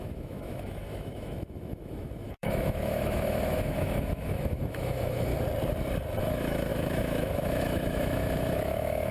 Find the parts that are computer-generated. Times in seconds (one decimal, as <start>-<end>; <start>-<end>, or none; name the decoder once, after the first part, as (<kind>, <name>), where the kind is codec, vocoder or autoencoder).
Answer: 0.0-5.3 (autoencoder, DAC-VAE); 6.2-9.1